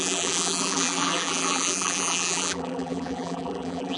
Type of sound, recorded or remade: remade